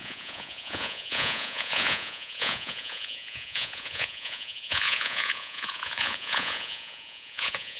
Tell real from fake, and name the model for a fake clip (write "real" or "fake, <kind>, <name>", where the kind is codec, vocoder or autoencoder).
fake, vocoder, Vocos